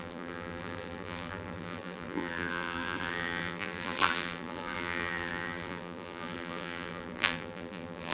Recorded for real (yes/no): no